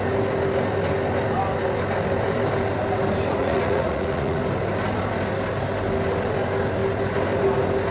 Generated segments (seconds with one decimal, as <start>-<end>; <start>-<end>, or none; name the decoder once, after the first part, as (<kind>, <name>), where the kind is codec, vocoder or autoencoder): 3.4-4.4 (vocoder, Vocos)